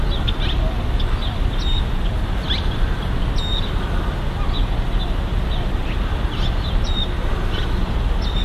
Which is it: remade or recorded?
recorded